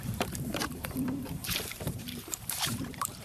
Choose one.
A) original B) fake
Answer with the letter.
B